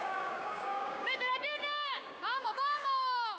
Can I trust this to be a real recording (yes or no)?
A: no